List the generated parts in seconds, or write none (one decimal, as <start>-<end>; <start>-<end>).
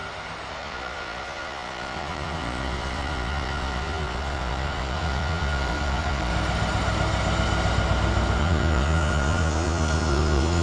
0.5-6.3; 8.4-10.6